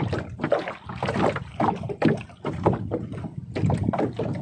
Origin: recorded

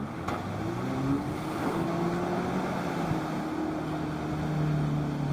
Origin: recorded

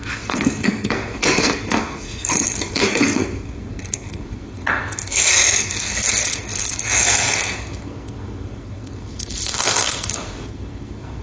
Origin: remade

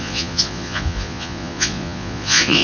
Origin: remade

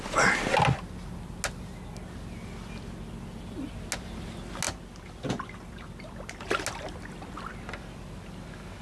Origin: recorded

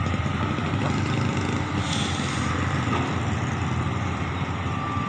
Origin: recorded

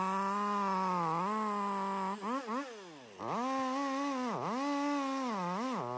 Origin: recorded